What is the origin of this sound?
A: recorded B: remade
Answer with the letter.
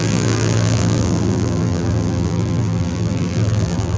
B